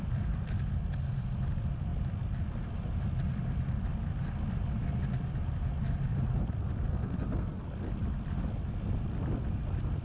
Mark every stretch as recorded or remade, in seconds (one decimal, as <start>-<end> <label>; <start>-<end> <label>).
0.0-6.9 recorded; 6.9-7.6 remade; 7.6-10.0 recorded